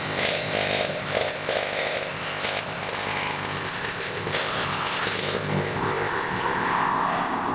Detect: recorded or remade remade